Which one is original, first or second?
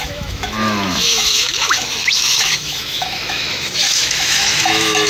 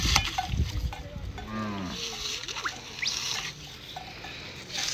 second